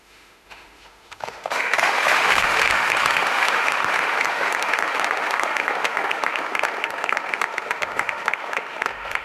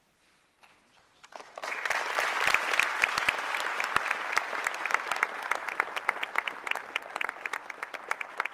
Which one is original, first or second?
second